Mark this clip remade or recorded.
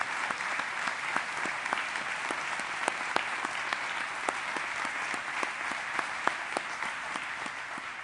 recorded